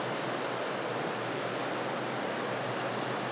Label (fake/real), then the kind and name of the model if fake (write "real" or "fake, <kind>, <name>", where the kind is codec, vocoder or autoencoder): real